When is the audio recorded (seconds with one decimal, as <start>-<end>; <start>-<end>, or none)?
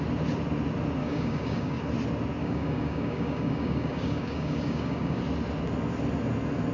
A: 0.0-1.0; 1.8-2.4; 5.2-6.7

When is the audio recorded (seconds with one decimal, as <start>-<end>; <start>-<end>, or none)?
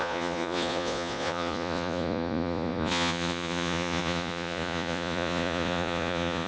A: none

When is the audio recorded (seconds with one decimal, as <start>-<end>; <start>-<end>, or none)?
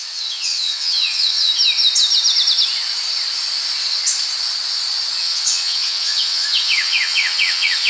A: 1.5-5.2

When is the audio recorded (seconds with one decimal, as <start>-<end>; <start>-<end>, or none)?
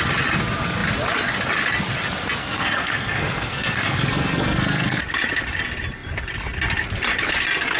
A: 0.0-2.4; 5.0-7.8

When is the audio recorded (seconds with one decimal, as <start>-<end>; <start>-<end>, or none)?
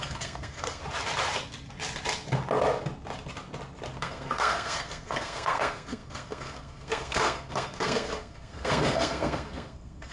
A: 0.8-4.0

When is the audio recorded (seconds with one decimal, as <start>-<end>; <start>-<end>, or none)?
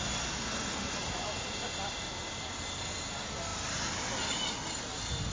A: 0.0-5.3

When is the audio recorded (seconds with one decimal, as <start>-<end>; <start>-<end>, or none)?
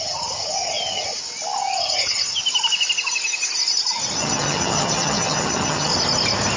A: 1.2-1.8; 2.4-4.2; 5.9-6.6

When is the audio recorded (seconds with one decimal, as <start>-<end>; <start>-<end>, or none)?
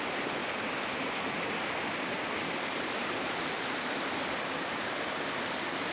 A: 0.0-5.9